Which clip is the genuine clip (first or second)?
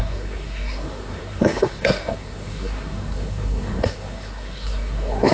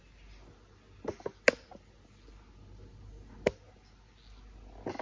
second